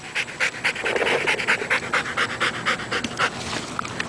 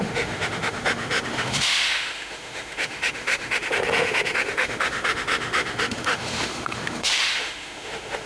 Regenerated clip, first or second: second